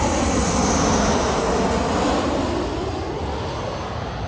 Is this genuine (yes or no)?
yes